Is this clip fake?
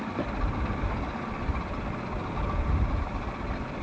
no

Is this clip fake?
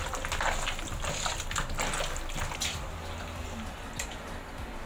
no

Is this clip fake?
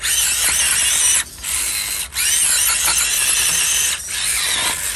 no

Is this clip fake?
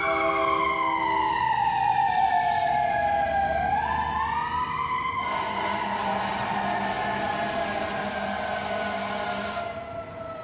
no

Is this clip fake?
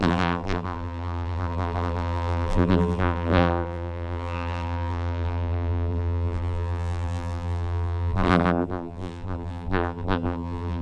yes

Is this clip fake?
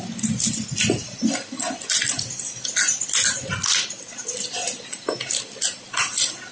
no